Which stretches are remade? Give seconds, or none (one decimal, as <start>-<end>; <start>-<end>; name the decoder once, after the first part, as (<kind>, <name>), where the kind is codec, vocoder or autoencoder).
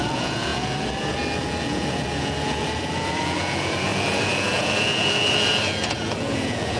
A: 0.0-6.8 (vocoder, Vocos)